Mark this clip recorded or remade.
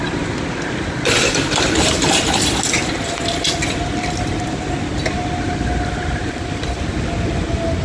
recorded